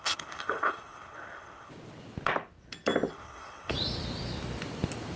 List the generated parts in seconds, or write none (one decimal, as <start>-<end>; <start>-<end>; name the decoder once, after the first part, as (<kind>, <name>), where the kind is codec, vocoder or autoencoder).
0.0-1.7 (codec, HILCodec); 3.1-3.7